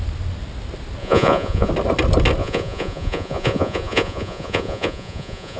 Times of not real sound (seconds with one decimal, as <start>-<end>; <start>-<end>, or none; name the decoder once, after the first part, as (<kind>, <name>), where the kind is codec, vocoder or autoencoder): 1.0-1.7 (vocoder, Vocos); 2.4-5.6